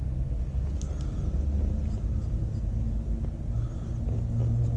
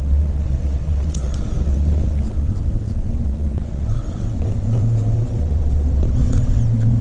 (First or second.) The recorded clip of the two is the first